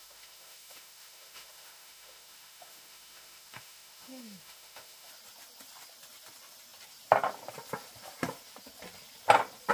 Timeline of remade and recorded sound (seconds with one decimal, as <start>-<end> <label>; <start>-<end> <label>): 0.0-5.1 remade; 5.1-9.7 recorded